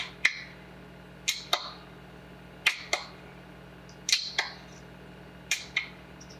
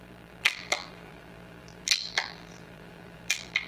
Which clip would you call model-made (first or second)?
second